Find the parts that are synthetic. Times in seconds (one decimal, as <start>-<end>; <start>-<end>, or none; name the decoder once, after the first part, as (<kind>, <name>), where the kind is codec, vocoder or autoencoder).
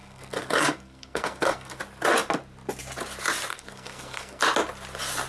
0.0-1.8 (codec, SNAC); 3.5-4.4